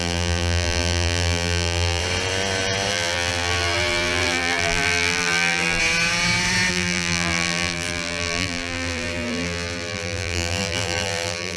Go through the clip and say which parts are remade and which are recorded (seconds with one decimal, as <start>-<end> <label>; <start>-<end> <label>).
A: 0.0-2.0 remade; 2.0-2.9 recorded; 2.9-5.8 remade; 5.8-6.7 recorded; 6.7-11.6 remade